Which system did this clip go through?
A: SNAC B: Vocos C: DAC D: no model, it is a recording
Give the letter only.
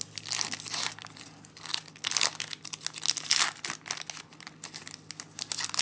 D